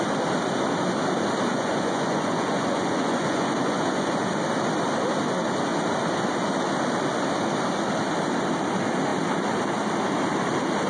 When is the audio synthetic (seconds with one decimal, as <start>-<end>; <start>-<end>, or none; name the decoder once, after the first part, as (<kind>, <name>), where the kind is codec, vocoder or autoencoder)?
1.5-4.3 (vocoder, Vocos)